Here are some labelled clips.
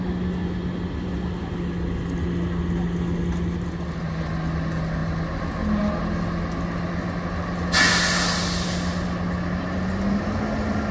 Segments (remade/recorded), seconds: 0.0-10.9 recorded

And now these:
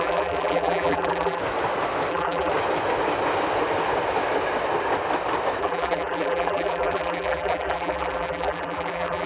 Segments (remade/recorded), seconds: 0.0-1.4 remade; 1.4-2.1 recorded; 2.1-2.5 remade; 2.5-5.6 recorded; 5.6-9.3 remade

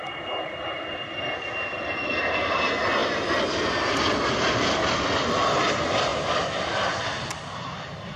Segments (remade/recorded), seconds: 0.0-6.1 recorded; 6.1-6.9 remade; 6.9-8.2 recorded

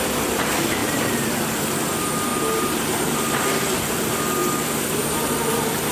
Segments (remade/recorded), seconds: 0.0-0.8 recorded; 0.8-1.6 remade; 1.6-5.9 recorded

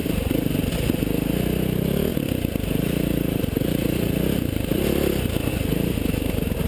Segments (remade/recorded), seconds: 0.0-0.7 remade; 0.7-2.1 recorded; 2.1-5.5 remade; 5.5-6.7 recorded

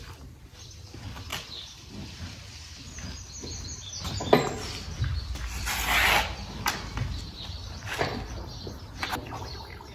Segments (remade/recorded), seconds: 0.0-1.3 recorded; 1.3-2.6 remade; 2.6-9.2 recorded; 9.2-9.9 remade

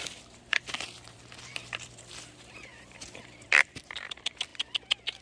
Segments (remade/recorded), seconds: 0.0-4.5 remade; 4.5-5.2 recorded